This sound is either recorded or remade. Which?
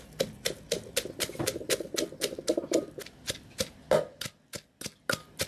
recorded